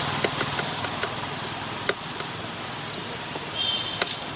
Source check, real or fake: real